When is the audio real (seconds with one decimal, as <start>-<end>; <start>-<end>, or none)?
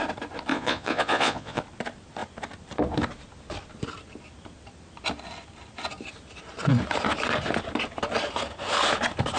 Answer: 0.0-0.5; 1.6-9.4